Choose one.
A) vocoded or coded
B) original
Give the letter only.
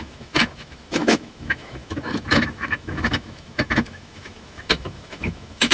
A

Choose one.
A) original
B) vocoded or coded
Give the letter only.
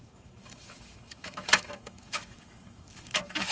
B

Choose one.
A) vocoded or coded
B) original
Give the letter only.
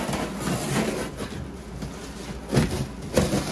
B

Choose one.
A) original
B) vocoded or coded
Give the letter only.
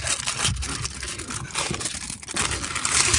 A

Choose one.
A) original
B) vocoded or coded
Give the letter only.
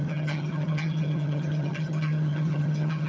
B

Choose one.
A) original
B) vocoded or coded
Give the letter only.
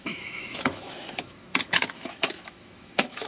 B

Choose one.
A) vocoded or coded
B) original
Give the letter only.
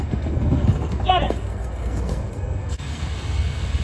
A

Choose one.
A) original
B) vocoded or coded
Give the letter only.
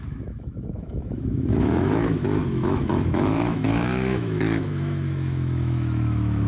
B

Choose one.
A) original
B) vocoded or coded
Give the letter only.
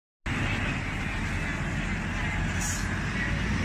A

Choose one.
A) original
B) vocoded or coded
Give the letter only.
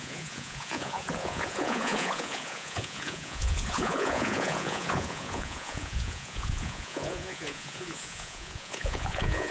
B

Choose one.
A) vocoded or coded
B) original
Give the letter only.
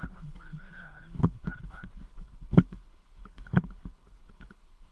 A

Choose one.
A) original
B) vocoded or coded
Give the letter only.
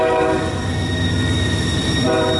A